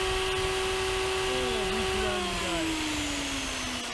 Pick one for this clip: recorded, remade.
recorded